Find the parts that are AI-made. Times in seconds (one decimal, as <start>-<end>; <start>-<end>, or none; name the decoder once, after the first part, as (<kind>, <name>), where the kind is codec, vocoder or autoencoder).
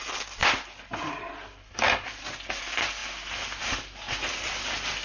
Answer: none